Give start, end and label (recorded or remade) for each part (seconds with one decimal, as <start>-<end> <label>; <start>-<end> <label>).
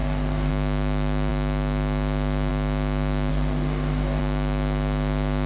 0.0-0.5 remade; 0.5-3.3 recorded; 3.3-4.2 remade; 4.2-5.5 recorded